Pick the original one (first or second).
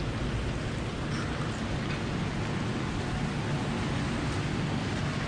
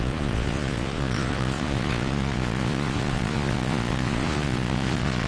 first